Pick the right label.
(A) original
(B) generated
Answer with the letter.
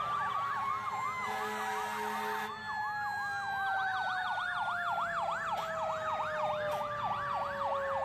A